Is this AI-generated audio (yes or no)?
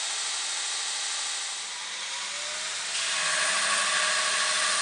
no